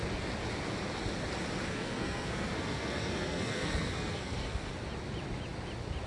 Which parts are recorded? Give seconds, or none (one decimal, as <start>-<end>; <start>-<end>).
0.0-1.7; 4.7-6.1